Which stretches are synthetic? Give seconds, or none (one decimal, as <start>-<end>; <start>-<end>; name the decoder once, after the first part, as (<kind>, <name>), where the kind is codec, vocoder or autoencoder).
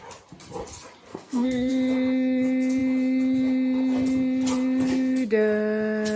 1.1-1.7 (codec, SNAC)